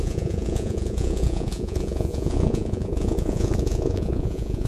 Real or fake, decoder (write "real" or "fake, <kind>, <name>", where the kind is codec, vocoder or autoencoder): fake, vocoder, Vocos